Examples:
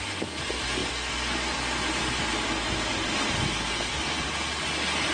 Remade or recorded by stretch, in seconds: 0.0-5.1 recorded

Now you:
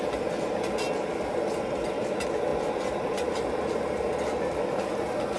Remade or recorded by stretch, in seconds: 0.0-5.4 recorded